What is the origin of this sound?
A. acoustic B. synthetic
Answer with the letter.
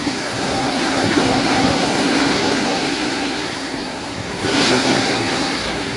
B